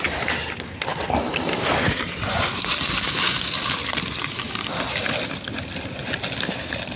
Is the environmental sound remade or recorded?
recorded